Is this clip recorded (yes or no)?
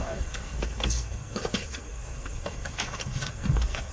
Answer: no